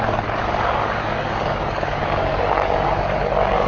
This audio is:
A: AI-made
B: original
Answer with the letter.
A